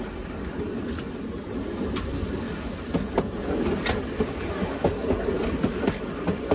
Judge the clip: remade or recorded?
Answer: recorded